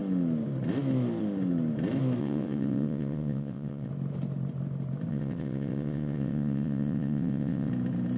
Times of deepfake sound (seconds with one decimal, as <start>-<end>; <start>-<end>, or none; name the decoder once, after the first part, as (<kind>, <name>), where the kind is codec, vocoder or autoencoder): 2.2-3.9 (vocoder, WaveNeXt); 5.1-7.7